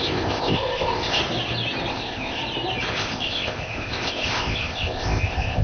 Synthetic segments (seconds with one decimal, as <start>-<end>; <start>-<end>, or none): 0.0-1.2; 1.9-2.4; 2.9-5.6